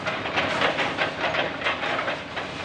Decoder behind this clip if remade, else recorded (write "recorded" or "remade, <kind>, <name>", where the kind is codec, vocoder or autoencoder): recorded